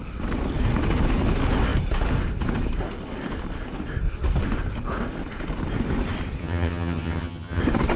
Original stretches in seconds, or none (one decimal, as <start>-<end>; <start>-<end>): 0.0-6.4; 7.6-8.0